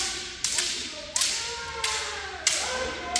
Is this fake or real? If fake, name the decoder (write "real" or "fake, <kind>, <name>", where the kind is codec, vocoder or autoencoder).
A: real